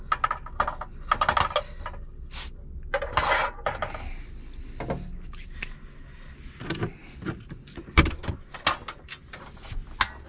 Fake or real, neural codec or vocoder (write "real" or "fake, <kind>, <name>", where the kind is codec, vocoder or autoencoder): real